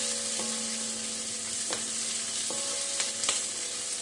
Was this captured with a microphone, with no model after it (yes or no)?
yes